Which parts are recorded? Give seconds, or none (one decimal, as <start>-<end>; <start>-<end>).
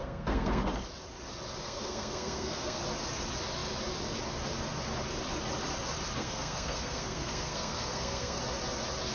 0.7-1.6; 2.8-6.2; 8.4-9.1